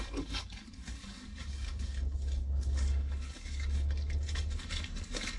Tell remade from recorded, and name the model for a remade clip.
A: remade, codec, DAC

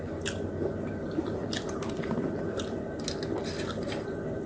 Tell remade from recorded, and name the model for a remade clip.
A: recorded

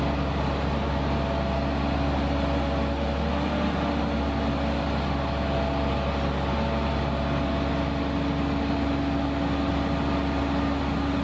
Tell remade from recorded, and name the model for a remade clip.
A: recorded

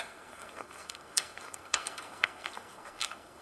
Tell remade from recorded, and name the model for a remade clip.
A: remade, codec, SNAC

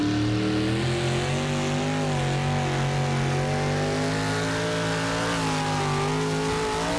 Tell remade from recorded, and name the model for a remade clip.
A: recorded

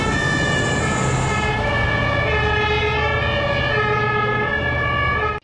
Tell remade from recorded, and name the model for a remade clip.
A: recorded